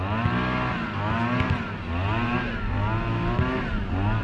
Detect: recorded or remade recorded